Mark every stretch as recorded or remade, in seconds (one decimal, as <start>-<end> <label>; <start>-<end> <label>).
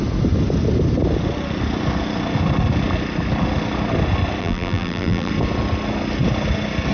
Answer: 0.0-4.4 recorded; 4.4-5.3 remade; 5.3-6.9 recorded